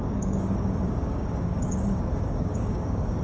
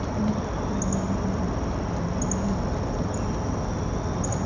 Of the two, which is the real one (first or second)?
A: second